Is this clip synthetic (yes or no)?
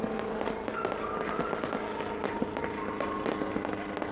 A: no